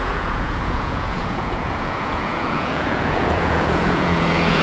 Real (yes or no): no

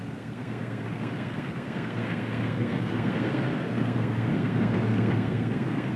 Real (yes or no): no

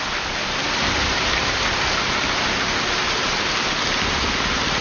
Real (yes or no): yes